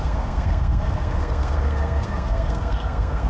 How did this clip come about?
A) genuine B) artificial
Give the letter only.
B